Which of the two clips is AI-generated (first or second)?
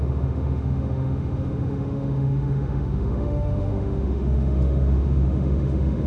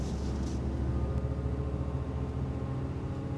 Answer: first